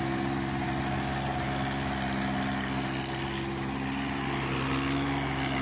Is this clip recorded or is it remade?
recorded